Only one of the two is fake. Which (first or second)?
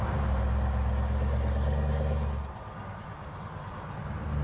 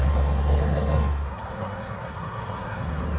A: second